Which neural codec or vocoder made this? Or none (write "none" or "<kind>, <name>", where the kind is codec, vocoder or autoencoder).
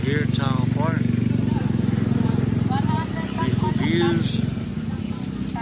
none